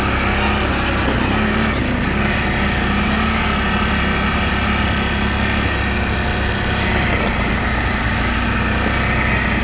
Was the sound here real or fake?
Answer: real